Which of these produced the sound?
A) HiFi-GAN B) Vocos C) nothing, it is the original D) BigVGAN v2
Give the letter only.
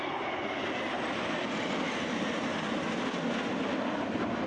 C